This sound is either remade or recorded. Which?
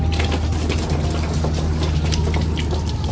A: recorded